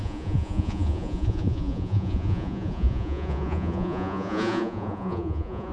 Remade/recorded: remade